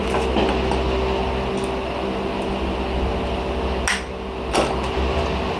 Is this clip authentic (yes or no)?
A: yes